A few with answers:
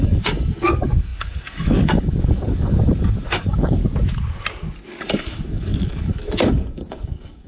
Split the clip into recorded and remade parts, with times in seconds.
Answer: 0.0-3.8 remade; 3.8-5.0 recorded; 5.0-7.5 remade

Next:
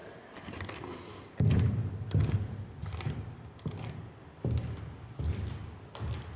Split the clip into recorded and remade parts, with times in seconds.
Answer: 0.0-1.3 remade; 1.3-2.8 recorded; 2.8-4.0 remade; 4.0-6.4 recorded

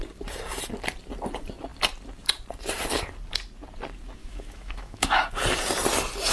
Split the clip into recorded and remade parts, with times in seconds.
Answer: 0.0-4.2 recorded; 4.2-5.2 remade; 5.2-6.3 recorded

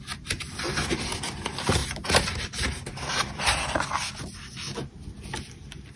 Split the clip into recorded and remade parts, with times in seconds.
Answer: 0.0-6.0 recorded

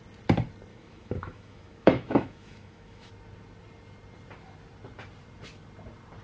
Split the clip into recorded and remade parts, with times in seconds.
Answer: 0.0-0.7 recorded; 0.7-3.1 remade; 3.1-6.2 recorded